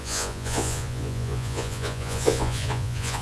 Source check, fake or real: fake